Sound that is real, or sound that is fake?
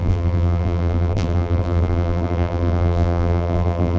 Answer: fake